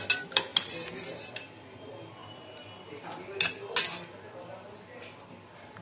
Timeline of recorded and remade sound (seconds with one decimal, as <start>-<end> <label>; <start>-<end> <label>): 0.0-5.8 recorded